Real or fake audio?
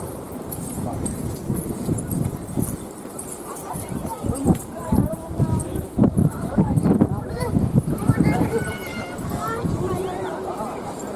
fake